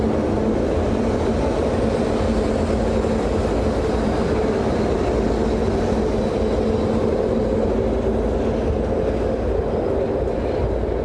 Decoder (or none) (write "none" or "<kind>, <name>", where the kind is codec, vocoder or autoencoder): none